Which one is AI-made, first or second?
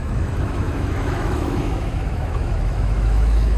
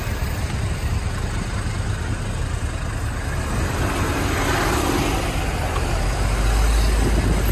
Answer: first